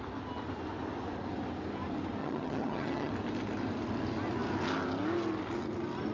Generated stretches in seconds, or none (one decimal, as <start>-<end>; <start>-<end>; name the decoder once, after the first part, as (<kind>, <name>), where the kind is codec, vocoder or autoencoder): 2.2-3.1 (vocoder, HiFi-GAN)